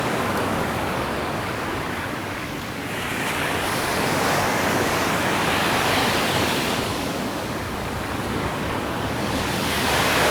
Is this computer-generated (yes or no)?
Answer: yes